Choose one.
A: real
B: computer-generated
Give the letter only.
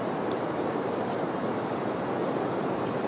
B